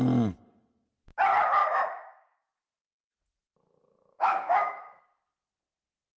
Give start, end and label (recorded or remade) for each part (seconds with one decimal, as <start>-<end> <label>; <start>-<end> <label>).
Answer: 0.0-1.6 recorded; 1.6-5.0 remade; 5.0-6.2 recorded